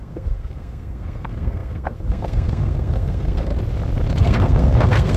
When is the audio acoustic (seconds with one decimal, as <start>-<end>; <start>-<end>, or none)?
3.5-4.2